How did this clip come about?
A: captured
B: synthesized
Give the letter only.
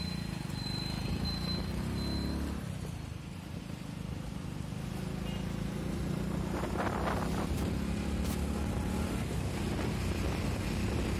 A